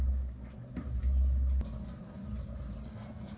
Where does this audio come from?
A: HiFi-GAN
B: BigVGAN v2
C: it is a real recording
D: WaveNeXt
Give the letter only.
C